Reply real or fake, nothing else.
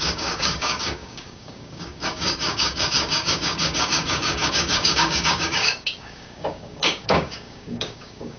fake